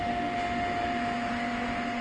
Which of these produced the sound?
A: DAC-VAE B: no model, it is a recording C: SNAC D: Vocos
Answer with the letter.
A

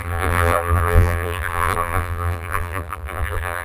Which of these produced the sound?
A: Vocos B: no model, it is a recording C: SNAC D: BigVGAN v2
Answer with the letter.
D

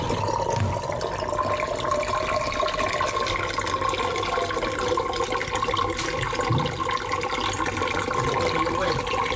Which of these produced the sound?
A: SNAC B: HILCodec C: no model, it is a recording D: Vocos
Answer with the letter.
C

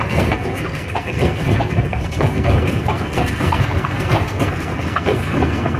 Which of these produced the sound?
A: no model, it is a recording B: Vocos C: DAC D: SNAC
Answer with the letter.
D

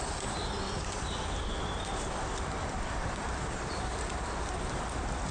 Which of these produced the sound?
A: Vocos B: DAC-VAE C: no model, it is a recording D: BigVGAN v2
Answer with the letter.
D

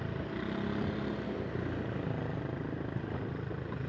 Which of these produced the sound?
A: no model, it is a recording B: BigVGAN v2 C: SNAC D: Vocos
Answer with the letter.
A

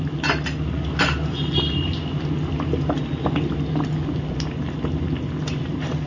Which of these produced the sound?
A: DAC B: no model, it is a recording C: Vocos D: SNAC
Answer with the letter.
B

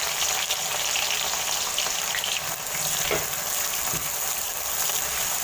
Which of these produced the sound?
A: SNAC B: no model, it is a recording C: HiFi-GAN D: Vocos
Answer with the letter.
B